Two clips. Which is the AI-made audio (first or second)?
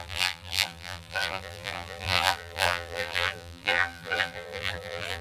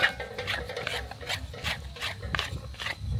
first